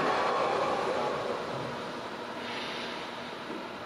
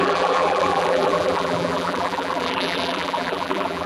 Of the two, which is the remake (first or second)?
second